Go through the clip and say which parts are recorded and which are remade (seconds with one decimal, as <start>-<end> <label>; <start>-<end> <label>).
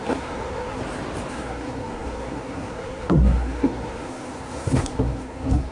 0.0-0.8 remade; 0.8-1.3 recorded; 1.3-5.7 remade